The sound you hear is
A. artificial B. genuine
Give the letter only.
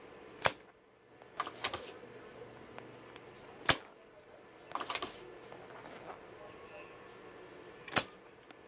B